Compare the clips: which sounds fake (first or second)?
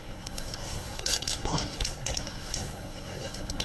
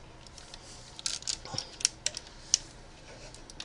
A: first